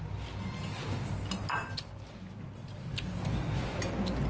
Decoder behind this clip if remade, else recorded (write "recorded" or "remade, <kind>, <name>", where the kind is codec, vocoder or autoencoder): recorded